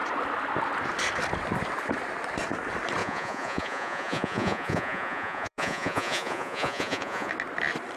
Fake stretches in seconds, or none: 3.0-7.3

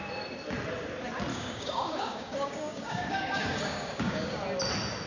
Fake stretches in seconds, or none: 1.3-4.4

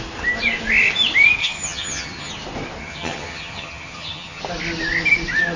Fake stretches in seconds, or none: 1.4-2.3; 2.8-4.4

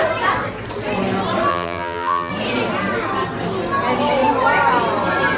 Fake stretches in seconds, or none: 1.5-2.3

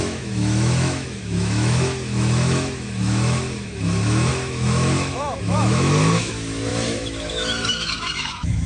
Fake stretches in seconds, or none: 0.0-8.7

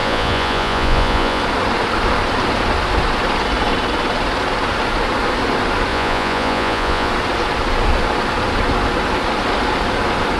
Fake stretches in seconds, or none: 0.0-1.4; 5.9-7.1

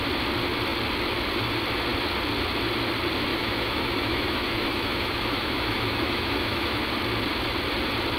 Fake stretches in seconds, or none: 3.3-6.8